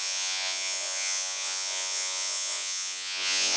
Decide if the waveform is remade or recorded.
remade